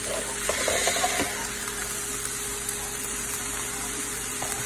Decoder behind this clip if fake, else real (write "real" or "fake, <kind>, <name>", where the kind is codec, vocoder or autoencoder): real